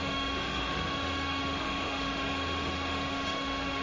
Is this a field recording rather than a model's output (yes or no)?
no